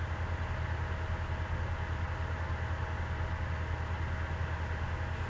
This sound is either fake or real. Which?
real